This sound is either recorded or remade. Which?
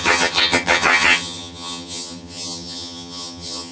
remade